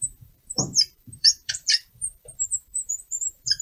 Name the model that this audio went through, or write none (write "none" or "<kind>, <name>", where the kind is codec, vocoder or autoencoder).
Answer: vocoder, BigVGAN v2